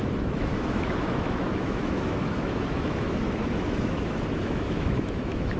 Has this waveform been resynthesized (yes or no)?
yes